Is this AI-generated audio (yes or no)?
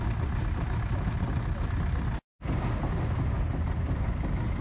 no